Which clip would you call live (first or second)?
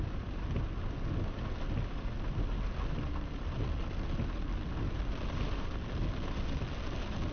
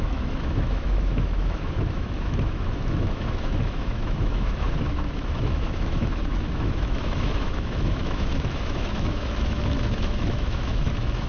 first